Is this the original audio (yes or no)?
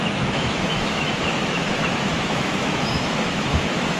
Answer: no